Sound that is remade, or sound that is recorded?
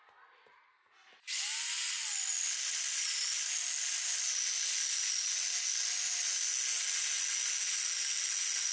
recorded